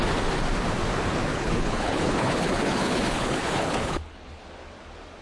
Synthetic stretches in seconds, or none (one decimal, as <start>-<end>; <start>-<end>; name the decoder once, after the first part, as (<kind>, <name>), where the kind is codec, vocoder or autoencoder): 1.3-4.4 (codec, HILCodec)

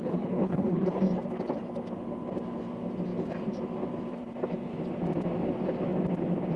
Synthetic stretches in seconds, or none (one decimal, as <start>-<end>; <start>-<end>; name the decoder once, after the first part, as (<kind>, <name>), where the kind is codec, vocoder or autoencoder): 0.0-1.0 (codec, HILCodec)

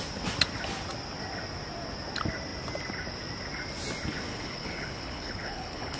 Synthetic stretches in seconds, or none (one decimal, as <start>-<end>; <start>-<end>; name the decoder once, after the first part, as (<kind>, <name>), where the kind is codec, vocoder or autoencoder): 4.3-6.0 (codec, HILCodec)

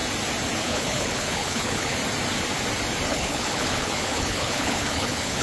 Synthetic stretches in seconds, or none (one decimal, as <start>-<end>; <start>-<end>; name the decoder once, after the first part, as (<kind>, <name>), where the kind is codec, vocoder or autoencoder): 0.6-2.0 (codec, HILCodec); 3.1-5.4

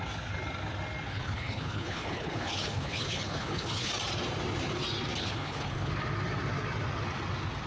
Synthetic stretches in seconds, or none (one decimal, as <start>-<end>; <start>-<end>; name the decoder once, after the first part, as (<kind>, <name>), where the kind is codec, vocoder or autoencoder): 1.1-3.9 (codec, HILCodec); 5.2-5.9